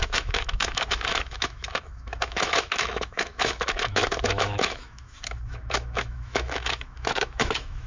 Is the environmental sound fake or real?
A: fake